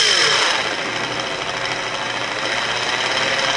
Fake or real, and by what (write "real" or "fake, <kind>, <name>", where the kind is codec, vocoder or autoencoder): real